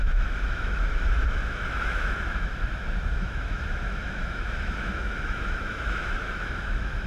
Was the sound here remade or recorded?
remade